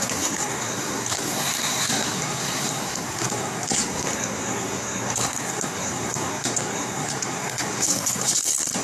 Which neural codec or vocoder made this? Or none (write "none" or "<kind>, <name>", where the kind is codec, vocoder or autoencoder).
codec, SNAC